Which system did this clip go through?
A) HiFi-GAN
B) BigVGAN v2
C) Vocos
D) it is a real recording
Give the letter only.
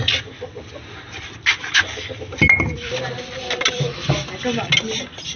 D